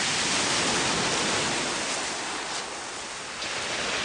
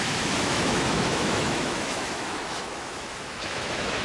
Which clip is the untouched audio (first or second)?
first